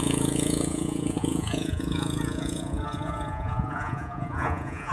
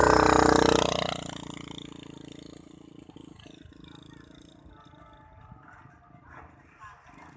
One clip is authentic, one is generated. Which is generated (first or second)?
first